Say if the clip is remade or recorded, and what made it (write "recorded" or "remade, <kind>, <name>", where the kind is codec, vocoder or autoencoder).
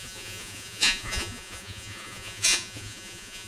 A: remade, vocoder, Vocos